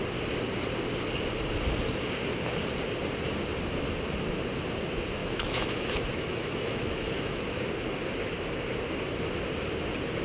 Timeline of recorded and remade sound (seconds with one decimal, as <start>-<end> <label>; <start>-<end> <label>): 0.0-5.2 recorded; 5.2-7.6 remade; 7.6-10.2 recorded